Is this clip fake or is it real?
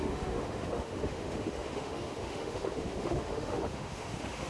fake